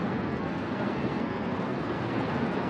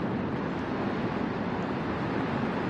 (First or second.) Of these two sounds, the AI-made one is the first